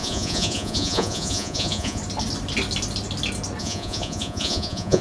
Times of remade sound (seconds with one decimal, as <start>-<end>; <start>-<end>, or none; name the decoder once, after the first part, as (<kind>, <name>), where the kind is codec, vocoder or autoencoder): 0.0-2.0 (vocoder, Vocos); 3.6-5.0